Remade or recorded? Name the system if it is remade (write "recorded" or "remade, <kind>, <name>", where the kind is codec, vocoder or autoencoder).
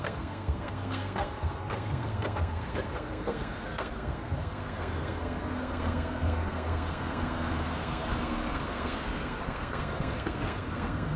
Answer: remade, codec, SNAC